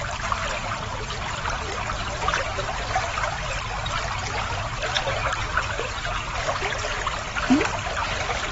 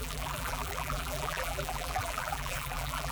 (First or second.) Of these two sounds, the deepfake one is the second